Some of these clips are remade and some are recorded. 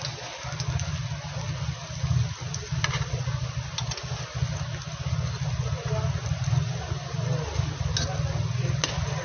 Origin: recorded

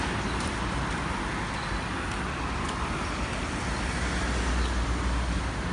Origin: recorded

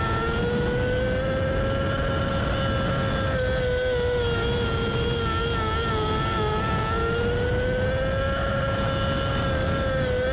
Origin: recorded